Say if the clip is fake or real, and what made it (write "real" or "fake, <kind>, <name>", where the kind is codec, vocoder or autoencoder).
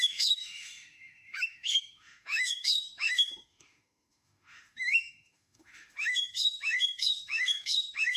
fake, autoencoder, DAC-VAE